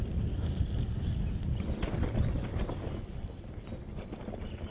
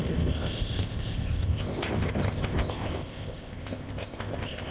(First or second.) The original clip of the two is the first